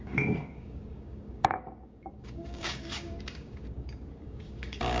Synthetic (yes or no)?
yes